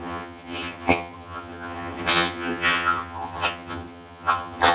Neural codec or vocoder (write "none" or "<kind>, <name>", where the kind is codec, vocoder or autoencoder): vocoder, HiFi-GAN